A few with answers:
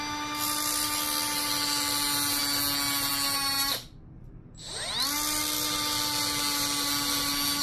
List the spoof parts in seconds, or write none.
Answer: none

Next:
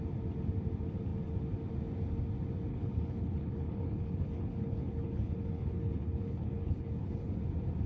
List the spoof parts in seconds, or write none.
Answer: 2.7-7.4 (codec, HILCodec)

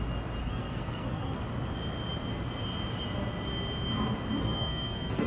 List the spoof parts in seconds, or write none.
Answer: 0.4-1.4 (codec, SNAC); 4.4-5.3

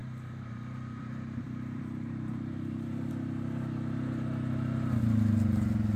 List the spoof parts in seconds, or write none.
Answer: 0.0-3.1 (vocoder, BigVGAN v2)

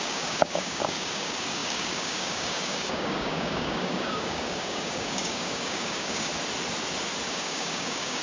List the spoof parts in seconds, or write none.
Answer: 0.0-6.3 (codec, DAC); 7.3-8.2